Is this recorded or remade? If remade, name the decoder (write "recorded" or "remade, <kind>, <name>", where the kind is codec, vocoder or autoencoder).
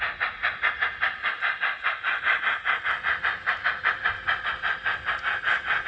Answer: recorded